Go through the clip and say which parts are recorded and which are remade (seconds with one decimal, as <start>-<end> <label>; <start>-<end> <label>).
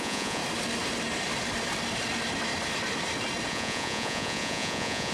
0.0-0.4 remade; 0.4-3.5 recorded; 3.5-5.1 remade